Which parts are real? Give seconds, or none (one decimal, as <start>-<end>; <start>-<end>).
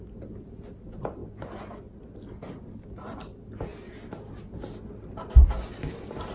0.0-6.3